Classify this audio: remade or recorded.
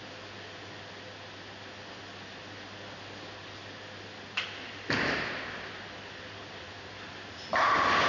recorded